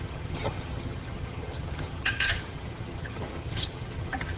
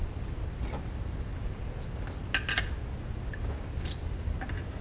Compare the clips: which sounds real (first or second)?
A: second